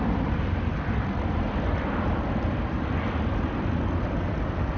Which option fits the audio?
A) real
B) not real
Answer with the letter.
A